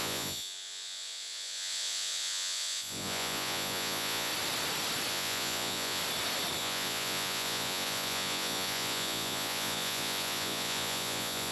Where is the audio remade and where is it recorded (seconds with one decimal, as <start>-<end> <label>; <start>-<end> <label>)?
0.0-4.3 remade; 4.3-5.1 recorded; 5.1-6.0 remade; 6.0-6.6 recorded; 6.6-11.5 remade